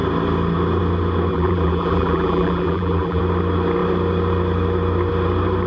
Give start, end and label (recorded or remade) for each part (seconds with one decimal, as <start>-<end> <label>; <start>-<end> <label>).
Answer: 0.0-1.3 recorded; 1.3-3.2 remade; 3.2-5.7 recorded